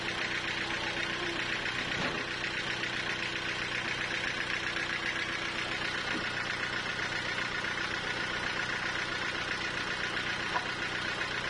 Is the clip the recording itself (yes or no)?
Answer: yes